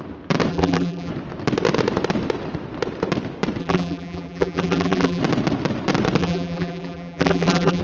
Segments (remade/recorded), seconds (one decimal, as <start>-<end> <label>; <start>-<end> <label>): 0.0-0.5 recorded; 0.5-1.1 remade; 1.1-3.6 recorded; 3.6-5.2 remade; 5.2-6.2 recorded; 6.2-7.8 remade